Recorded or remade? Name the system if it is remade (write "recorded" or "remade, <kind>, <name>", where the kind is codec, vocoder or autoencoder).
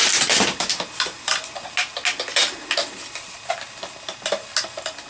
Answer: recorded